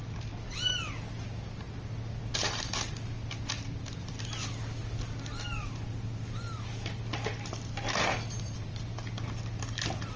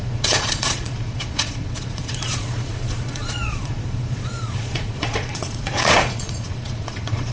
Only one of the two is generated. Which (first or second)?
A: second